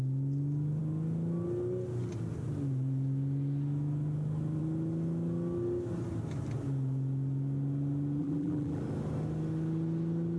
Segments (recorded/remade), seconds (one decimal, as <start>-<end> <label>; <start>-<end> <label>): 0.0-8.2 recorded; 8.2-8.8 remade; 8.8-10.4 recorded